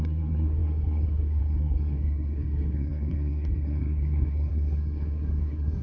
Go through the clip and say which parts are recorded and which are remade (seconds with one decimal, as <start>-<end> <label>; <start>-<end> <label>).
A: 0.0-5.8 remade